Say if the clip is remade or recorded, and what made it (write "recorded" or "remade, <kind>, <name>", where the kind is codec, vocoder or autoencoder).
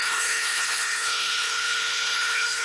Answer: remade, codec, HILCodec